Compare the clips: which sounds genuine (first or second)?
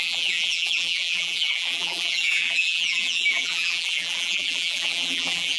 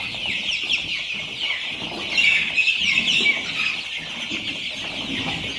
second